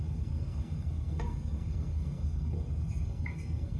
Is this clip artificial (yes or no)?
yes